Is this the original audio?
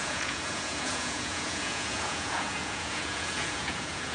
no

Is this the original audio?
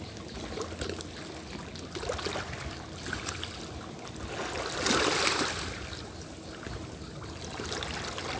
yes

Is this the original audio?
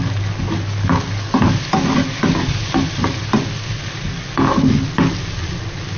yes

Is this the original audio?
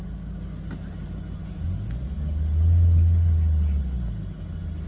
yes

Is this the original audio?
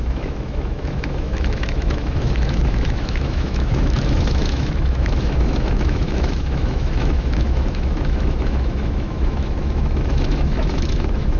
no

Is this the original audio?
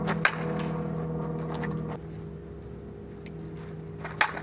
yes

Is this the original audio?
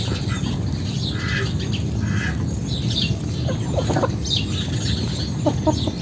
yes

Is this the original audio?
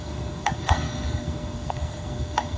no